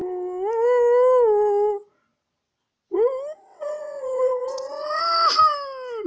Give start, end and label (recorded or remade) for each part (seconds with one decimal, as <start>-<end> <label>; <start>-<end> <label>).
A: 0.0-3.5 recorded; 3.5-5.0 remade; 5.0-6.1 recorded